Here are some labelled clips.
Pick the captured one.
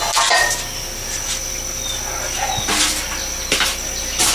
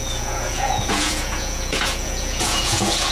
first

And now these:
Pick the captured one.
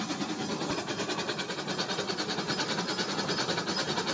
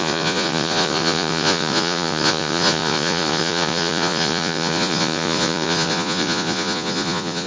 first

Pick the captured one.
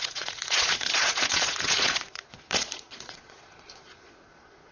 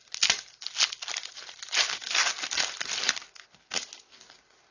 second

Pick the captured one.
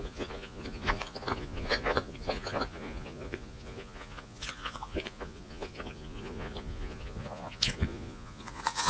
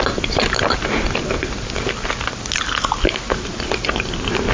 second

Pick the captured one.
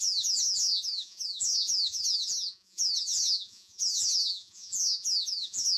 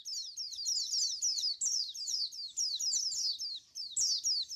second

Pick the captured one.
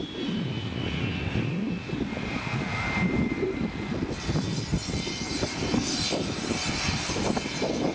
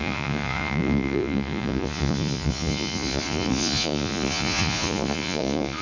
first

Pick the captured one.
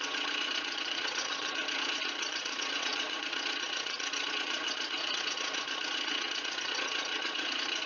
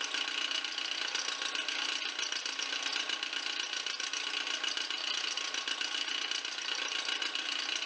second